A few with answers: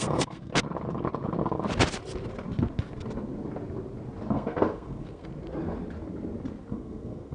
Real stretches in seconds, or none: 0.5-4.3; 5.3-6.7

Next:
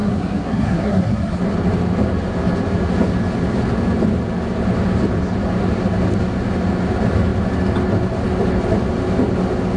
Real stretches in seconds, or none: 1.4-9.8

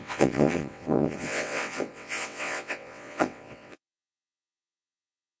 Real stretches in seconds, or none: none